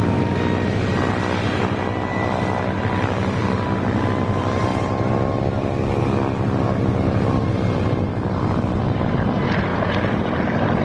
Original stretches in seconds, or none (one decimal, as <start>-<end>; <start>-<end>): 0.0-4.7; 6.0-9.7